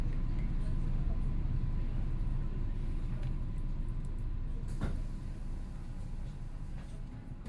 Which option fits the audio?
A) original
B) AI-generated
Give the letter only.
A